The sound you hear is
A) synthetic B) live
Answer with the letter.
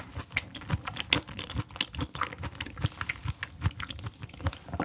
B